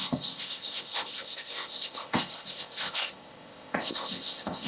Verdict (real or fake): fake